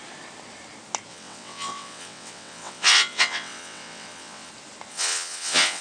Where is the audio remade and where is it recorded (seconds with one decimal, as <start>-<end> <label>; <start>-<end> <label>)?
0.0-1.1 recorded; 1.1-4.5 remade; 4.5-4.9 recorded; 4.9-5.8 remade